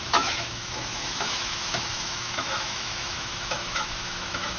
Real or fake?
fake